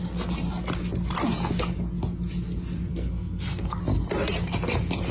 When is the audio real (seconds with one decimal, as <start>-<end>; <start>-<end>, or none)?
0.0-2.9; 3.8-5.1